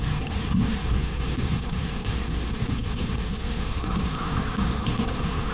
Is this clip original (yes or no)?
no